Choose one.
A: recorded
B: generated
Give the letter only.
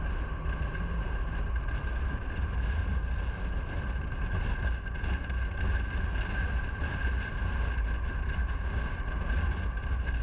A